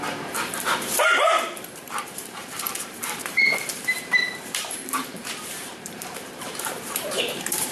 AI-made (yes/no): yes